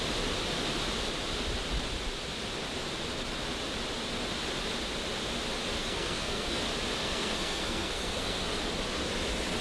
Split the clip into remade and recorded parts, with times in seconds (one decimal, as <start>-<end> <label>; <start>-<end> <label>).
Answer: 0.0-5.8 recorded; 5.8-6.6 remade; 6.6-7.0 recorded; 7.0-8.6 remade; 8.6-9.6 recorded